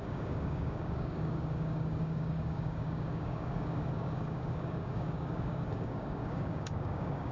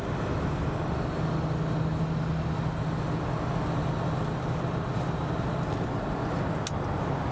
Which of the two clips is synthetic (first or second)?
first